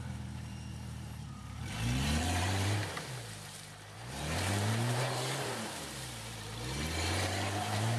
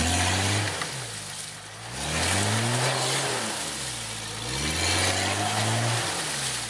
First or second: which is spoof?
first